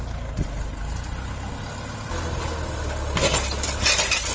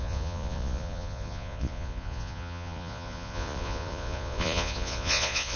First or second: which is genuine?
first